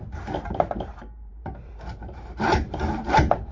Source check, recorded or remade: remade